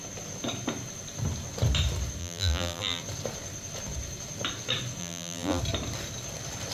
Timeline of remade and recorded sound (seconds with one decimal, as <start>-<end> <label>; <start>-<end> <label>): 0.0-2.2 recorded; 2.2-3.0 remade; 3.0-5.0 recorded; 5.0-5.6 remade; 5.6-6.7 recorded